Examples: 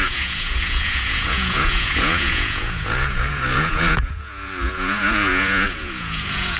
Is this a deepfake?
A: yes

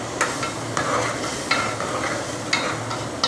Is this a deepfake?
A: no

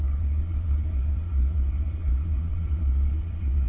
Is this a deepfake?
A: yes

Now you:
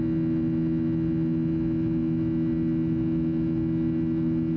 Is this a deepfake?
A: no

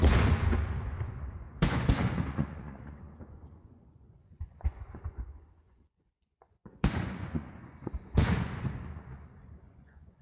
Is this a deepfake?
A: yes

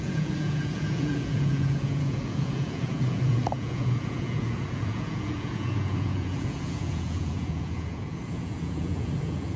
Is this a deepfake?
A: yes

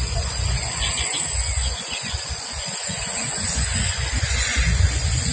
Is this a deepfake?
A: yes